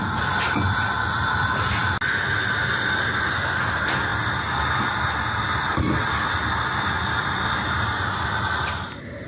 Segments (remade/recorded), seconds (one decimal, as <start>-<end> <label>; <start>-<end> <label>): 0.0-9.3 recorded